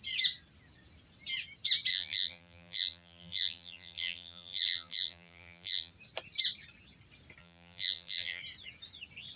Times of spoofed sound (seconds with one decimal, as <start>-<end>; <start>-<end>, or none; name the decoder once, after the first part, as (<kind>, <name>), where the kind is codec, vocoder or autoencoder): 1.9-5.9 (vocoder, BigVGAN v2); 7.4-8.4